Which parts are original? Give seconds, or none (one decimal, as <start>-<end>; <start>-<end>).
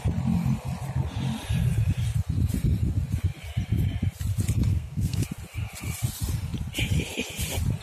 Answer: 0.0-4.7; 5.2-7.8